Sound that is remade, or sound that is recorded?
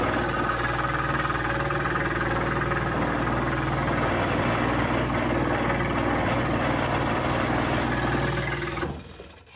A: recorded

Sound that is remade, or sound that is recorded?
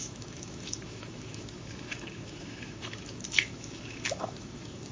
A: remade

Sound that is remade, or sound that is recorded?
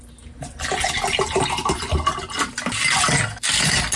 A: recorded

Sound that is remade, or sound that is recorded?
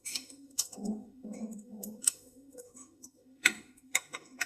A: remade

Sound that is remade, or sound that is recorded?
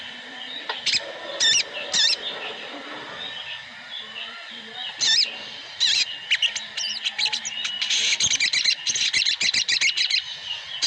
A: recorded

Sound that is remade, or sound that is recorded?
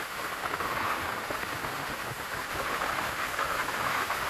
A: remade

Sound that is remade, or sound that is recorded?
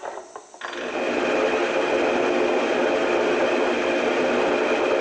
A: recorded